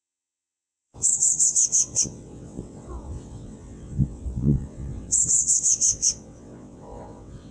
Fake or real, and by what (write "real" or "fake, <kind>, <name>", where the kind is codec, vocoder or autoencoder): fake, vocoder, WaveNeXt